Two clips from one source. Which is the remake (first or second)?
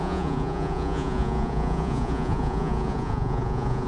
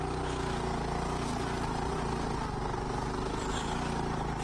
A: first